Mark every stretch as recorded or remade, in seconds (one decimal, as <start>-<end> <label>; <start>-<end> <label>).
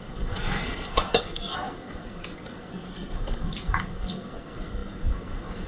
0.0-5.7 remade